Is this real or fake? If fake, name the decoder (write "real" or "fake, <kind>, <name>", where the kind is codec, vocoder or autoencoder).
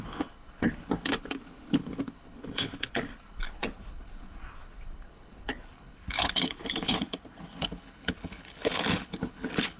fake, codec, HILCodec